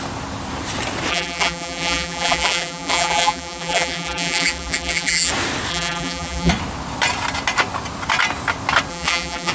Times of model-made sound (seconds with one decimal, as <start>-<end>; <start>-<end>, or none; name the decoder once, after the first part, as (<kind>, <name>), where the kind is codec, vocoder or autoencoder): 1.1-5.3 (vocoder, BigVGAN v2); 5.7-6.5; 8.9-9.5